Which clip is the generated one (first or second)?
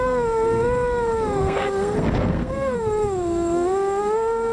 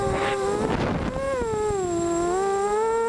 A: first